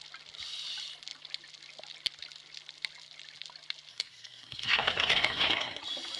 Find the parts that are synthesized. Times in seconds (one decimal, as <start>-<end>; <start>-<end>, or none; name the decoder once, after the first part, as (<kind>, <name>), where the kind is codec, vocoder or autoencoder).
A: 3.9-5.8 (codec, SNAC)